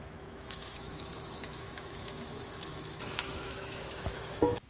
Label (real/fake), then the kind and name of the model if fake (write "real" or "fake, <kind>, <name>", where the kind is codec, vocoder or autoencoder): fake, autoencoder, DAC-VAE